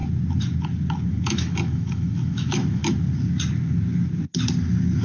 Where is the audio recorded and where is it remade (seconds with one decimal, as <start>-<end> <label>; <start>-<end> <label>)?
0.0-1.1 recorded; 1.1-2.8 remade; 2.8-5.0 recorded